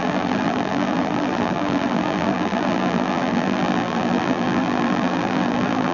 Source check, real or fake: fake